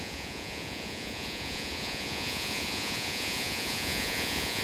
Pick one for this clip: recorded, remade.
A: remade